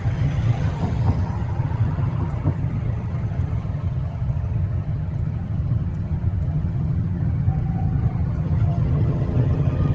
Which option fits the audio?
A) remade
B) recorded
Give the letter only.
A